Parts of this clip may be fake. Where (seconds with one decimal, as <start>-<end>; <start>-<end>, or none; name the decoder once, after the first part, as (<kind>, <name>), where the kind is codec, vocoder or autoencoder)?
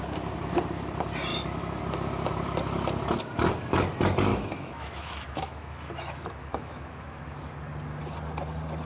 1.3-1.8 (autoencoder, DAC-VAE); 4.3-7.2